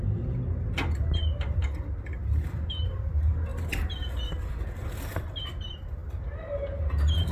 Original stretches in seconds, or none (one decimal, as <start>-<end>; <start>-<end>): 0.0-1.6; 3.1-3.5; 5.5-7.3